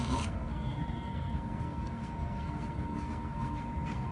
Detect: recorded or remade remade